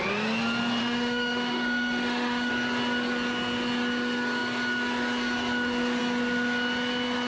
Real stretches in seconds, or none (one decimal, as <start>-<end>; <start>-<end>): 0.0-0.8; 2.5-7.3